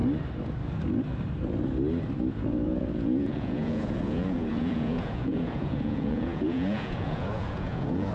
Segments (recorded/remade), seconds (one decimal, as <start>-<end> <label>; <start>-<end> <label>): 0.0-2.3 recorded; 2.3-8.1 remade